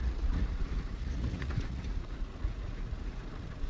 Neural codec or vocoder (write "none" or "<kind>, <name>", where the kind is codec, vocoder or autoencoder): vocoder, Vocos